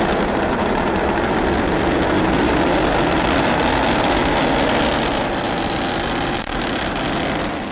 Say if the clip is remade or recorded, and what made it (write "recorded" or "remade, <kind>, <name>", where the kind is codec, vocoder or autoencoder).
recorded